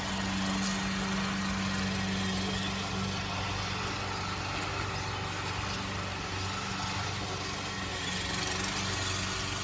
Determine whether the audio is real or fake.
real